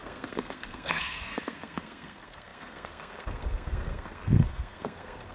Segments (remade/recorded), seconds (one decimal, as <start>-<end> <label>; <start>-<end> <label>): 0.0-5.3 remade